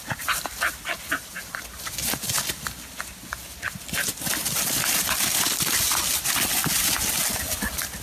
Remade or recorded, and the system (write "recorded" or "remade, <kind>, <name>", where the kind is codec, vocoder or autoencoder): recorded